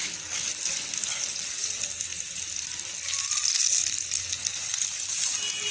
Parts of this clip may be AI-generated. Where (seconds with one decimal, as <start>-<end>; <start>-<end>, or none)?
none